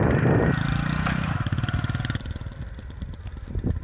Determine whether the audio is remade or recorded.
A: recorded